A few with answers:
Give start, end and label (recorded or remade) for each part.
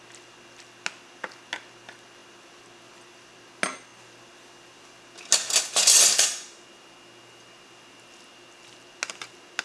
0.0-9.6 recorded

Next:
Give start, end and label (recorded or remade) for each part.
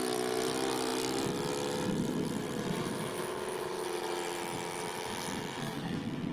0.0-5.6 recorded; 5.6-6.3 remade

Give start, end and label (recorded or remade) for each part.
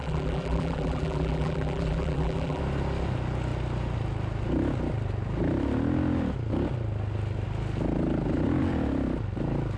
0.0-2.6 remade; 2.6-9.8 recorded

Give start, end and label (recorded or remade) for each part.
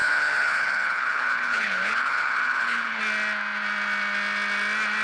0.0-3.0 remade; 3.0-5.0 recorded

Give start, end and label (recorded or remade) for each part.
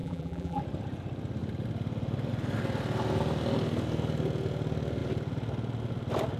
0.0-0.6 remade; 0.6-6.4 recorded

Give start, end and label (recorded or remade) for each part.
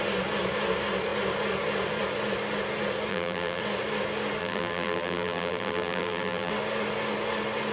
0.0-3.1 recorded; 3.1-3.6 remade; 3.6-4.4 recorded; 4.4-6.5 remade; 6.5-7.7 recorded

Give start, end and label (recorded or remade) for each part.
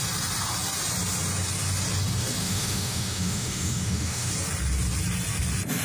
0.0-2.4 recorded; 2.4-4.3 remade; 4.3-5.8 recorded